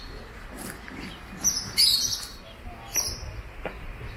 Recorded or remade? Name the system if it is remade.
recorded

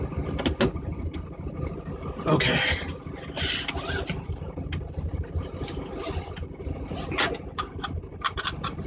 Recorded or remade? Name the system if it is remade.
recorded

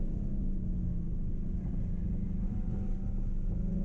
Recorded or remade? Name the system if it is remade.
recorded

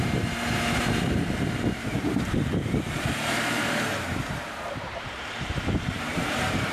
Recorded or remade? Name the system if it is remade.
remade, vocoder, BigVGAN v2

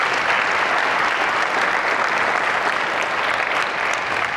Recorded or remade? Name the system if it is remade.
recorded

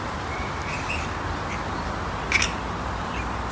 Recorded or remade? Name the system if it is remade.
recorded